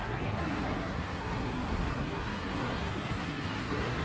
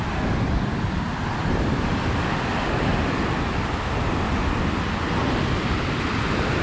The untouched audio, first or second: second